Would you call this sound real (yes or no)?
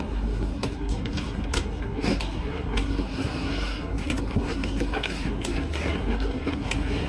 no